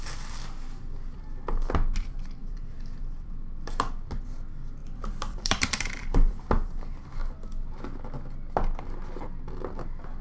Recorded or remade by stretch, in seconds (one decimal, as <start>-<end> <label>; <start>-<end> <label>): 0.0-2.4 recorded; 2.4-3.3 remade; 3.3-4.8 recorded; 4.8-6.4 remade; 6.4-10.2 recorded